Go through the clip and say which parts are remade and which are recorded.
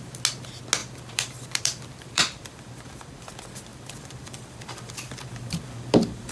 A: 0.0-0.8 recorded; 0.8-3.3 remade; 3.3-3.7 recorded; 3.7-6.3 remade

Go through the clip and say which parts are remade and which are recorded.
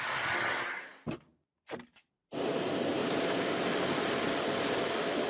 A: 0.0-3.0 recorded; 3.0-3.5 remade; 3.5-5.3 recorded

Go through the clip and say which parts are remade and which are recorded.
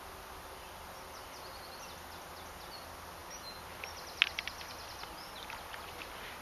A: 0.0-6.4 recorded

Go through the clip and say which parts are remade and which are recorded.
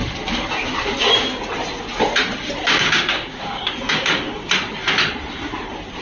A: 0.0-2.7 recorded; 2.7-4.5 remade; 4.5-6.0 recorded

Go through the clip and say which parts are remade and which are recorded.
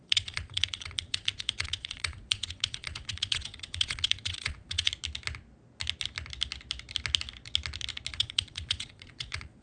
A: 0.0-4.9 remade; 4.9-8.1 recorded; 8.1-9.6 remade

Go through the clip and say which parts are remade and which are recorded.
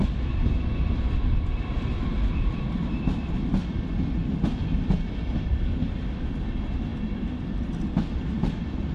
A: 0.0-8.9 recorded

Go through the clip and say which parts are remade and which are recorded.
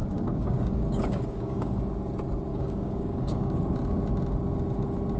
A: 0.0-1.8 remade; 1.8-2.5 recorded; 2.5-3.6 remade; 3.6-5.2 recorded